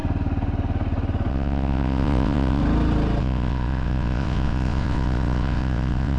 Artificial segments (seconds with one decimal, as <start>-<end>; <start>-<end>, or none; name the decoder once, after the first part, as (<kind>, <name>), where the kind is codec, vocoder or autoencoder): 1.3-2.6 (vocoder, WaveNeXt); 3.2-6.2